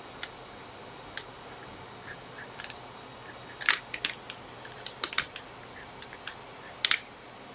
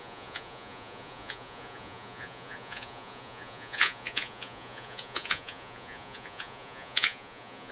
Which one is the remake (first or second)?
second